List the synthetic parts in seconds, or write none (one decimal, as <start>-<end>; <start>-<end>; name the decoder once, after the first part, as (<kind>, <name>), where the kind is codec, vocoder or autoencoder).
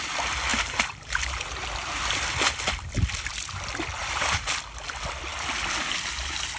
0.5-2.0 (vocoder, BigVGAN v2); 4.0-4.5